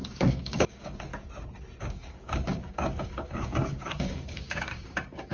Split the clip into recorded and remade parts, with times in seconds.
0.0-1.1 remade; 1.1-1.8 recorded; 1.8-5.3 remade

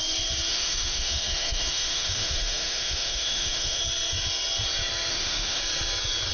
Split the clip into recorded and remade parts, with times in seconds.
0.0-0.5 recorded; 0.5-3.8 remade; 3.8-5.1 recorded; 5.1-5.6 remade; 5.6-6.3 recorded